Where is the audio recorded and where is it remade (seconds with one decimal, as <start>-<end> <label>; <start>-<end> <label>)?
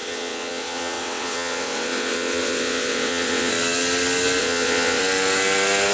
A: 0.0-3.5 remade; 3.5-4.4 recorded; 4.4-5.0 remade; 5.0-5.9 recorded